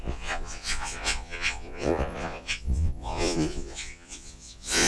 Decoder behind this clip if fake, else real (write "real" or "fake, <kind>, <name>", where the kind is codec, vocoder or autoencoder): fake, vocoder, Vocos